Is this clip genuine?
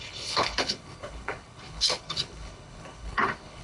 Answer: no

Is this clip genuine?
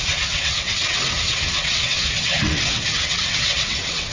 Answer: no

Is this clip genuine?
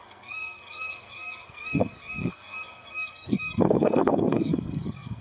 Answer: no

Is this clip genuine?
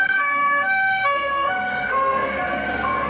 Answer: no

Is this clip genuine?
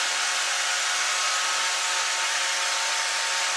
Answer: yes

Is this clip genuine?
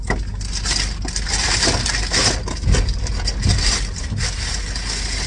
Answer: yes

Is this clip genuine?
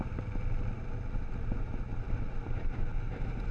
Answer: yes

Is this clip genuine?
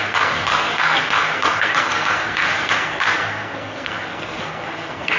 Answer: no